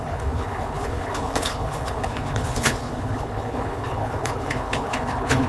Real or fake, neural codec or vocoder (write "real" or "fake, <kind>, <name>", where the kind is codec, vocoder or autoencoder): fake, codec, HILCodec